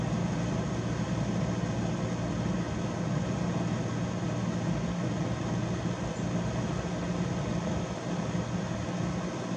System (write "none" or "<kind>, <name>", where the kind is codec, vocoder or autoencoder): none